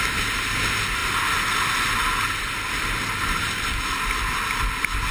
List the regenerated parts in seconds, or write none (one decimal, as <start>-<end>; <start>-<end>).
none